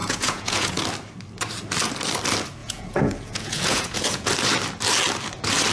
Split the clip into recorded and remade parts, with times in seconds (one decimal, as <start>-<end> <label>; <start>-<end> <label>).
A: 0.0-0.8 remade; 0.8-2.6 recorded; 2.6-4.3 remade; 4.3-5.7 recorded